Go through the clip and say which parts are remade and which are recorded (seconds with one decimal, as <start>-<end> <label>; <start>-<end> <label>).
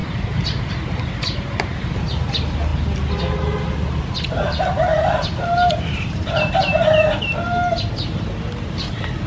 0.0-0.7 remade; 0.7-4.9 recorded; 4.9-6.3 remade; 6.3-9.3 recorded